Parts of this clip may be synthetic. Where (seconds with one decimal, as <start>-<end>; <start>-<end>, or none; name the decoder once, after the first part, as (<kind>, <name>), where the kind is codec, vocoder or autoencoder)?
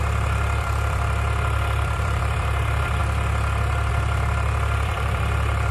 0.0-3.0 (vocoder, BigVGAN v2); 3.9-5.7